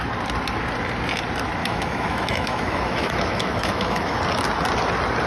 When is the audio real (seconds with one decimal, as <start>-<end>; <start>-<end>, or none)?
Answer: 0.0-1.6; 4.2-5.3